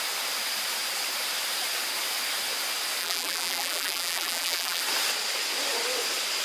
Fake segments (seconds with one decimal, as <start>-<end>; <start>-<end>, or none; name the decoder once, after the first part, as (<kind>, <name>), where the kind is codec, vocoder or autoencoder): 3.0-4.8 (vocoder, BigVGAN v2)